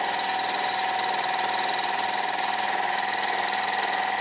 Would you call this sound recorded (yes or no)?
yes